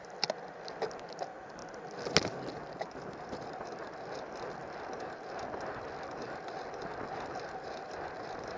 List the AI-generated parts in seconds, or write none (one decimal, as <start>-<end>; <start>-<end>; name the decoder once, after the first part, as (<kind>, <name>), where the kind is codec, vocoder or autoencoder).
none